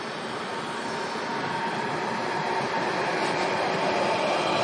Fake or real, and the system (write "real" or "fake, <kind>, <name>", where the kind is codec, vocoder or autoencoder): real